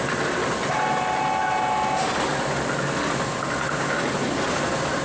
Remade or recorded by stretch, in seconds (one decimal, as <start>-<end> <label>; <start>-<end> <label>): 0.0-5.0 recorded